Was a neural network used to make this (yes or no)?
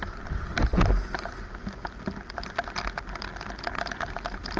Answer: no